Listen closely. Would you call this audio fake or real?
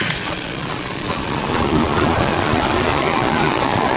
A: fake